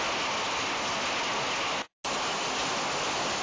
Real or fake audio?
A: real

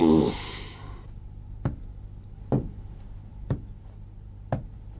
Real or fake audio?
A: real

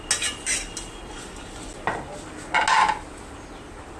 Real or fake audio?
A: real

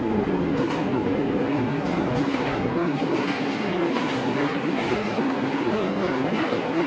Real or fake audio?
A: fake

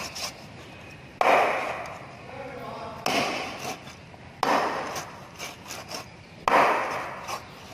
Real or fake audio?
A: real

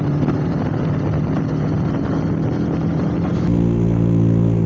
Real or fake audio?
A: real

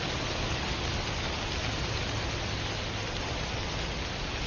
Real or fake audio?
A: real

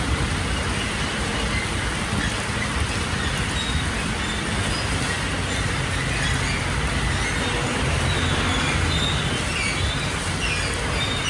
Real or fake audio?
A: real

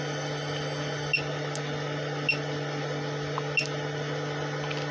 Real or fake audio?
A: real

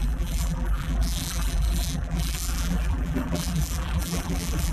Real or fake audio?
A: fake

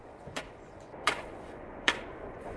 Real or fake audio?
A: fake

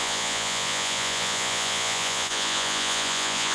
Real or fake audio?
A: fake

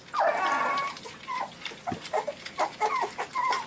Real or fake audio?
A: real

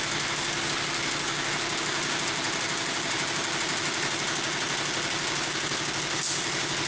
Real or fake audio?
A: real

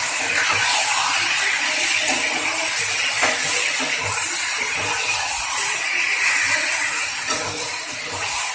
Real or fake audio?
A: real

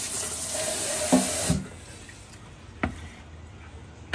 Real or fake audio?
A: real